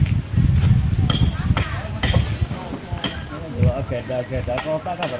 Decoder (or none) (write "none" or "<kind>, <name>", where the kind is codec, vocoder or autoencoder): none